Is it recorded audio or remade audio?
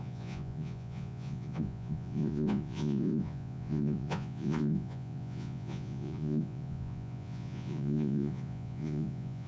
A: remade